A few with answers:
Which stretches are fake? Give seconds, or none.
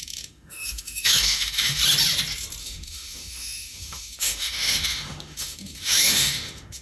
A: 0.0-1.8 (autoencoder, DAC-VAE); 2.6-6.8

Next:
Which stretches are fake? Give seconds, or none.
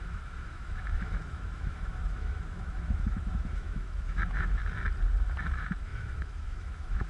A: 0.0-4.6 (autoencoder, DAC-VAE); 5.4-7.1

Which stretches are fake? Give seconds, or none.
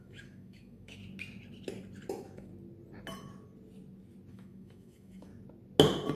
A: 0.0-1.0 (autoencoder, DAC-VAE); 2.1-2.5; 4.3-5.3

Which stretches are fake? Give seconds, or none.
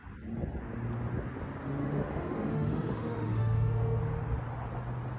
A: 1.8-4.0 (autoencoder, DAC-VAE)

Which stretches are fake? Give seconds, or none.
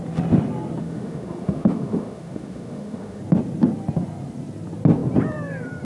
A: 0.8-3.2 (autoencoder, DAC-VAE)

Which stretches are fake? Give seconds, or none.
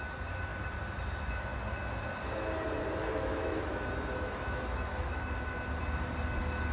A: 3.0-5.5 (autoencoder, DAC-VAE)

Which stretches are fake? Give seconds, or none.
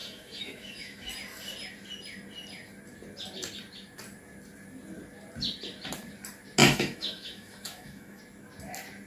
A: 0.0-1.1 (autoencoder, DAC-VAE); 6.6-8.2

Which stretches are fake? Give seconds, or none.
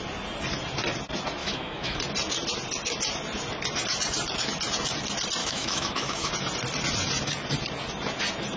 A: 1.4-2.0 (autoencoder, DAC-VAE); 5.4-6.3